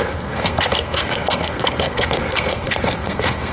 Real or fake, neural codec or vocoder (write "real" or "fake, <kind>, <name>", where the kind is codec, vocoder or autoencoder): fake, codec, SNAC